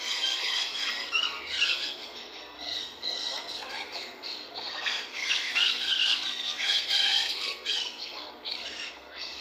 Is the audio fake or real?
fake